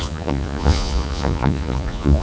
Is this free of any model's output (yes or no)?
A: no